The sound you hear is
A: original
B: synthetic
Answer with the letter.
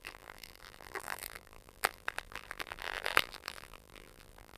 B